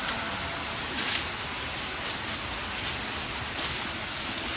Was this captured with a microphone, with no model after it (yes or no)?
yes